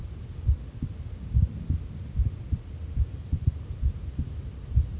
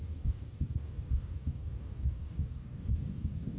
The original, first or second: first